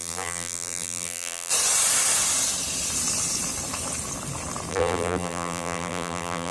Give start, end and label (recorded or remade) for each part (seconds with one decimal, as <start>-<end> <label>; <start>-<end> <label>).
0.0-1.5 remade; 1.5-4.7 recorded; 4.7-6.5 remade